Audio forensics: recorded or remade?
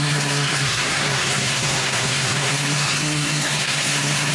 remade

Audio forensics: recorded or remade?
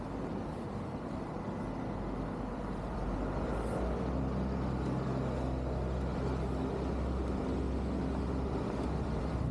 recorded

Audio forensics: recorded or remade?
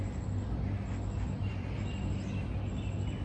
recorded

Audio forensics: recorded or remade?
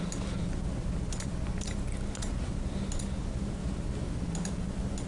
recorded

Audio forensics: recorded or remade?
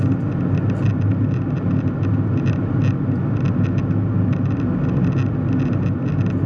recorded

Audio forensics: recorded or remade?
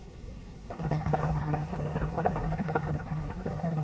remade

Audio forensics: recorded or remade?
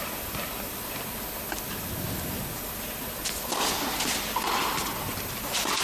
recorded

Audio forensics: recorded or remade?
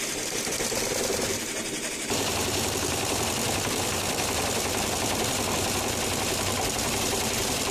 remade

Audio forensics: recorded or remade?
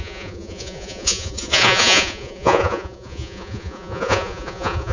remade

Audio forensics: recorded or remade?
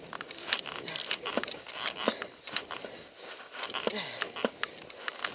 recorded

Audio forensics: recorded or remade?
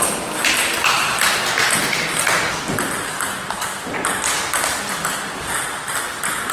recorded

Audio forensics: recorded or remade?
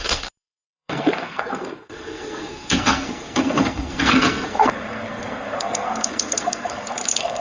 remade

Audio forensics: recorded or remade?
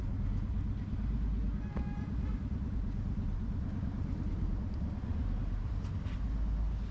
recorded